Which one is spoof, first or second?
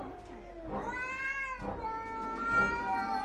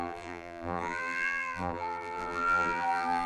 second